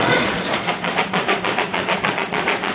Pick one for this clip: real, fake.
fake